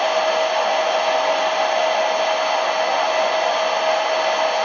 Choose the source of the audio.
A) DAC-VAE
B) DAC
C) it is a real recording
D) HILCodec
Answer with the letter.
C